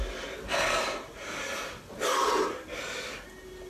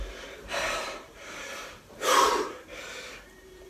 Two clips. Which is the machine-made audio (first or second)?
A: second